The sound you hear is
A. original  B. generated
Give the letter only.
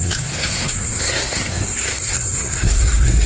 B